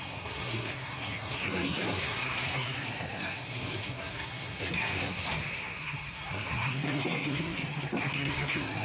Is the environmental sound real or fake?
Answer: fake